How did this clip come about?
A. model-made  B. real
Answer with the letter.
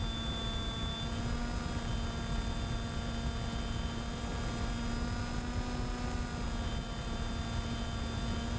B